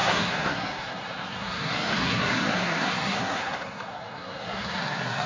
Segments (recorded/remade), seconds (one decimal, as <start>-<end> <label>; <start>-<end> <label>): 0.0-5.3 remade